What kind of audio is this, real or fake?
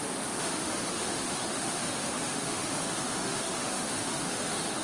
fake